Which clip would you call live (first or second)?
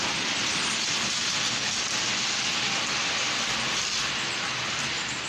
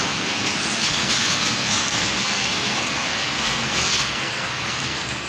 first